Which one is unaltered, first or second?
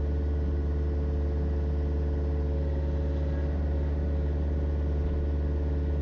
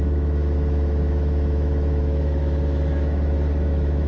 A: first